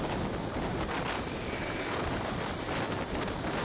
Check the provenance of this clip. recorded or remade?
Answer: recorded